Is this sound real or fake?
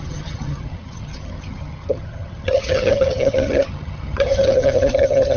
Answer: fake